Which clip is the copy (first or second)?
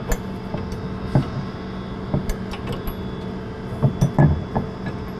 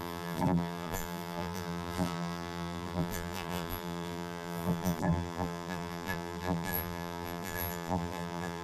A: second